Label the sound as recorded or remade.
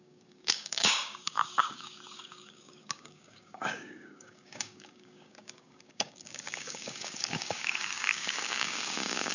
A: remade